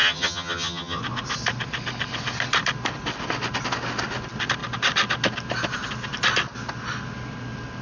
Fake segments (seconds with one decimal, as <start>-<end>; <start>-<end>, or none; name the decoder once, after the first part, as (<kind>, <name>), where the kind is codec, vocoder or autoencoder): 0.0-1.0 (vocoder, HiFi-GAN)